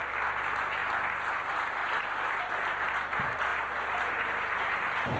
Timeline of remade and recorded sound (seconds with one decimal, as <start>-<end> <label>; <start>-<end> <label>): 0.0-5.2 recorded